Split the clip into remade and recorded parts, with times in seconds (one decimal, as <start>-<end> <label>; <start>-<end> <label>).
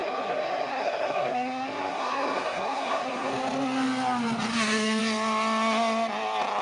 0.0-3.3 remade; 3.3-4.5 recorded; 4.5-5.0 remade; 5.0-6.6 recorded